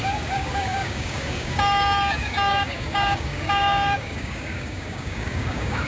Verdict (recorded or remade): remade